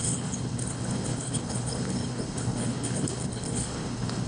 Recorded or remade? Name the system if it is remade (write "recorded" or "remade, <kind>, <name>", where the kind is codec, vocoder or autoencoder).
remade, codec, HILCodec